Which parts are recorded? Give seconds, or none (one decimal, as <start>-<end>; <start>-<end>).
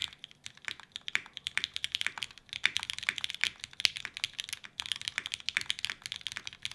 0.0-6.7